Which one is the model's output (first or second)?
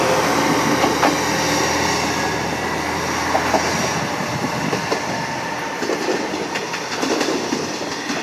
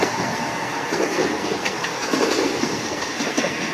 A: second